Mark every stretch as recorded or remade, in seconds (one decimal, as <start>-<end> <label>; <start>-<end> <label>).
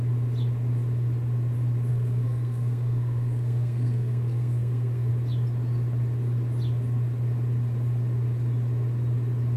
0.0-1.9 recorded; 1.9-5.1 remade; 5.1-9.6 recorded